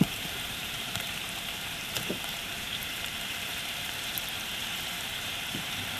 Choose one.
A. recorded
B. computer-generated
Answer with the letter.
B